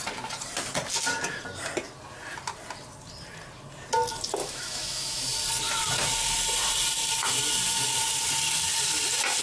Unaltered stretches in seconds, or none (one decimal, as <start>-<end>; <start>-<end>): 0.0-4.4; 5.2-9.4